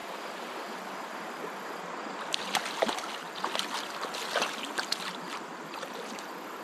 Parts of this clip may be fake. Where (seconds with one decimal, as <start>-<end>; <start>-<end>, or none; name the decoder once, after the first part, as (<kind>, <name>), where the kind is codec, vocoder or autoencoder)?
none